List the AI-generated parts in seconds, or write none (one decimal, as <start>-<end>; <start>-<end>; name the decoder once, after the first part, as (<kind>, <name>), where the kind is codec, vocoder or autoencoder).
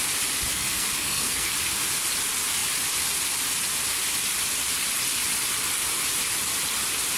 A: 0.5-1.5 (codec, SNAC)